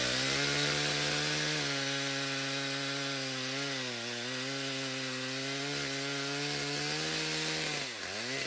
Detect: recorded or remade recorded